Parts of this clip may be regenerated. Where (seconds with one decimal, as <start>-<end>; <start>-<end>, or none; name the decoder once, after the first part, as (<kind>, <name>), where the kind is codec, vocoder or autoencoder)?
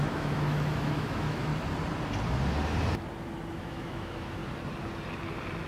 0.0-1.5 (autoencoder, DAC-VAE); 3.5-4.4